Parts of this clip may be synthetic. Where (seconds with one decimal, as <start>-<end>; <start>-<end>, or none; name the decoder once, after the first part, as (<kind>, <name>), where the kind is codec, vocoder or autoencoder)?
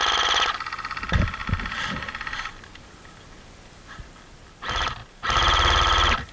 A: none